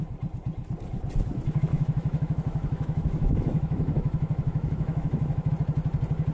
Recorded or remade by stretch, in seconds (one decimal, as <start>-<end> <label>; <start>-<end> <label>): 0.0-1.7 recorded; 1.7-5.5 remade; 5.5-6.3 recorded